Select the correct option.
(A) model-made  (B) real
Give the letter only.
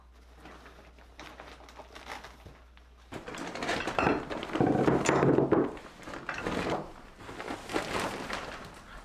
B